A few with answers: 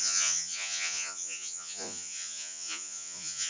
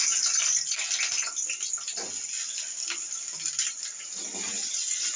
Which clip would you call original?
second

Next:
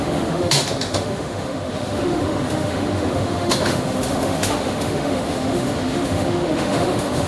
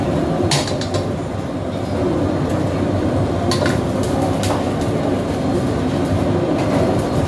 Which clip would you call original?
second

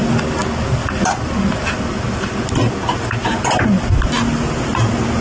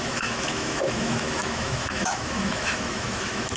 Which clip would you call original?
first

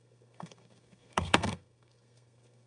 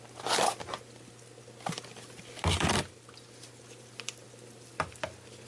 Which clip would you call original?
second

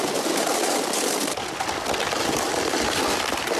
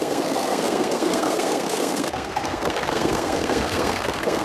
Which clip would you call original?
first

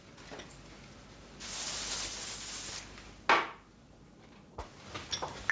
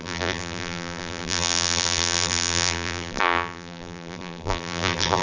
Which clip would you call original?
first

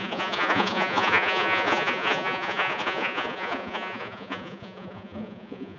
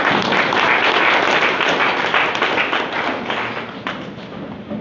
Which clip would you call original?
second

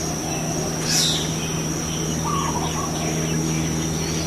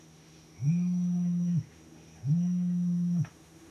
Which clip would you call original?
first